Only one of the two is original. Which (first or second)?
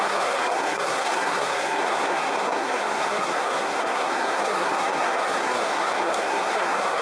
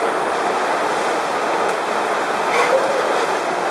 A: second